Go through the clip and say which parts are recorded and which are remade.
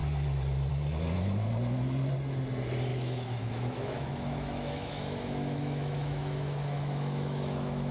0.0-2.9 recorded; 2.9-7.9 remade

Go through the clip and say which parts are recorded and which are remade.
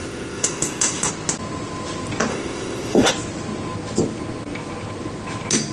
0.0-1.1 remade; 1.1-2.3 recorded; 2.3-3.1 remade; 3.1-5.7 recorded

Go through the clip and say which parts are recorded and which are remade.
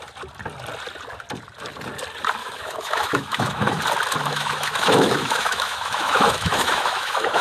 0.0-2.4 recorded; 2.4-3.8 remade; 3.8-4.2 recorded; 4.2-7.4 remade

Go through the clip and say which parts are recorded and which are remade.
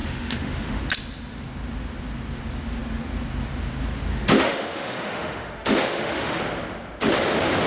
0.0-0.8 remade; 0.8-4.1 recorded; 4.1-6.4 remade; 6.4-7.7 recorded